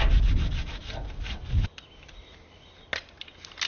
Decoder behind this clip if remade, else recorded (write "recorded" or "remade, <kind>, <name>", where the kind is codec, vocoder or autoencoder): recorded